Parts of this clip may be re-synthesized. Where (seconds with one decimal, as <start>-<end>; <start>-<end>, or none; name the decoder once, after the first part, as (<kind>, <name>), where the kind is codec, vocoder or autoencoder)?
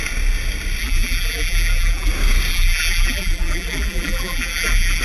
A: 0.8-2.1 (vocoder, BigVGAN v2); 2.5-5.0